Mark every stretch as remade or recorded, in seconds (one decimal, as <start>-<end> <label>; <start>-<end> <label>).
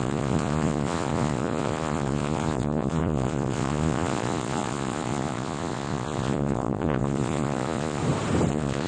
0.0-8.0 remade; 8.0-8.5 recorded; 8.5-8.9 remade